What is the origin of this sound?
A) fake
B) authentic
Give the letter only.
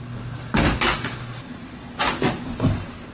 B